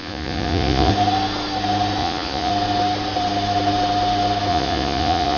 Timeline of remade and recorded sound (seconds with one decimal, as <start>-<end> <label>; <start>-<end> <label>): 0.0-0.9 remade; 0.9-2.0 recorded; 2.0-2.5 remade; 2.5-4.5 recorded; 4.5-5.4 remade